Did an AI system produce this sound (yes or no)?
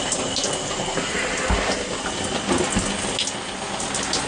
no